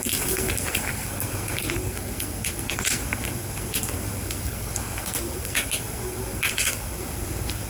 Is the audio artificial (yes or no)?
yes